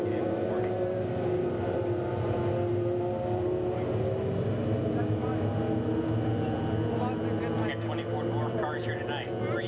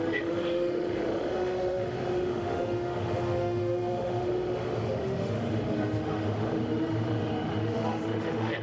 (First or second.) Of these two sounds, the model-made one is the second